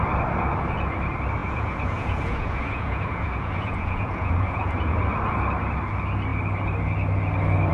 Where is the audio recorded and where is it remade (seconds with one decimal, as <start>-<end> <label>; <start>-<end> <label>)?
0.0-1.4 recorded; 1.4-5.0 remade; 5.0-7.7 recorded